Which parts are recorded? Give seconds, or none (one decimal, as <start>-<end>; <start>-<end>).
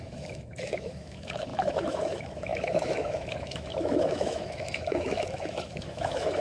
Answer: none